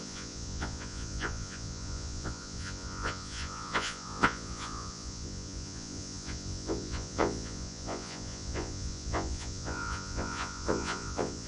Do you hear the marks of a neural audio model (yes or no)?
yes